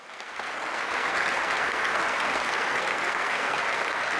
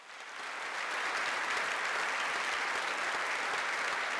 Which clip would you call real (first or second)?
second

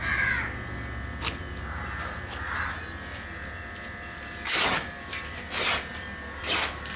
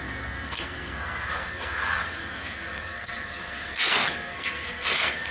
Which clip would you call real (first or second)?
first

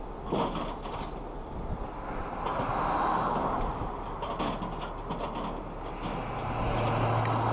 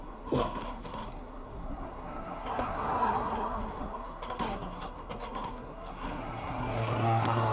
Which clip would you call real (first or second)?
first